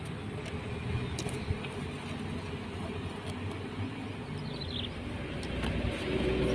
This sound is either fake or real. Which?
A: real